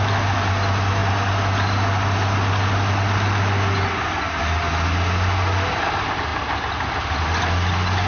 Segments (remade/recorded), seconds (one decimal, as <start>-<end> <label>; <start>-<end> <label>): 0.0-8.1 recorded